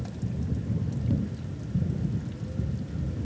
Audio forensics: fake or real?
real